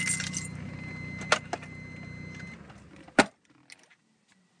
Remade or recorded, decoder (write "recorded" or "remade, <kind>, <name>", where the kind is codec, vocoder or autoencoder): recorded